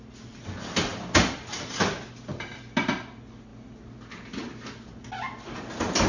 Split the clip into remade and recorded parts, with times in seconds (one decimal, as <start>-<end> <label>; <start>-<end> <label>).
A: 0.0-6.1 recorded